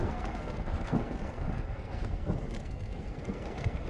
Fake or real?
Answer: fake